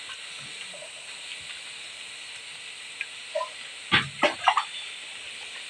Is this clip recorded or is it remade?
recorded